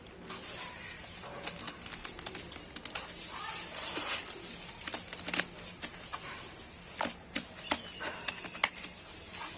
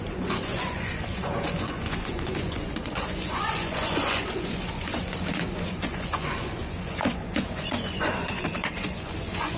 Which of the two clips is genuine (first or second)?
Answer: first